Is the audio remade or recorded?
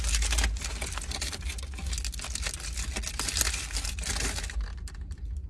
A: recorded